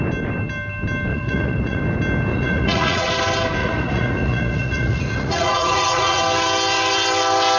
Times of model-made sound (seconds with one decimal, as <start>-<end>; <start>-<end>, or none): 1.1-1.8; 2.3-3.1; 3.6-6.2